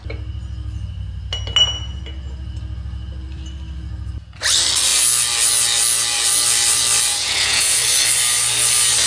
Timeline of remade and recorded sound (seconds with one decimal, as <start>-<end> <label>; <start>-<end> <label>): 0.0-7.1 recorded; 7.1-7.8 remade; 7.8-9.1 recorded

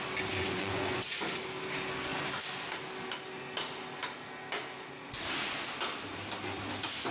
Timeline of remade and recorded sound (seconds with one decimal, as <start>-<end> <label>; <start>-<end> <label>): 0.0-0.4 recorded; 0.4-1.1 remade; 1.1-7.1 recorded

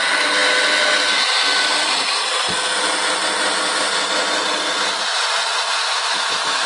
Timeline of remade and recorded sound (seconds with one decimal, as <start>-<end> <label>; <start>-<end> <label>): 0.0-5.8 recorded; 5.8-6.7 remade

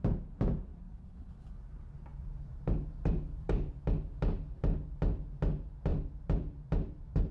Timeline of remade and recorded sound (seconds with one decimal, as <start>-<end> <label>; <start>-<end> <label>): 0.0-0.7 recorded; 0.7-1.4 remade; 1.4-2.1 recorded; 2.1-3.7 remade; 3.7-5.9 recorded; 5.9-7.3 remade

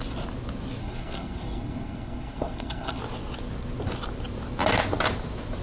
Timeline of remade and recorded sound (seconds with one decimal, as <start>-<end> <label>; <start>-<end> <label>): 0.0-0.8 recorded; 0.8-3.0 remade; 3.0-5.6 recorded

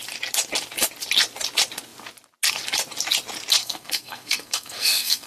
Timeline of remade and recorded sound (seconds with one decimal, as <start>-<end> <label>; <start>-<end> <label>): 0.0-3.6 recorded; 3.6-5.3 remade

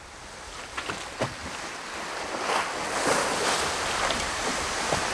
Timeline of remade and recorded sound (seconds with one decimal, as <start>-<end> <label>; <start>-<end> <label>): 0.0-1.4 recorded; 1.4-4.5 remade; 4.5-5.1 recorded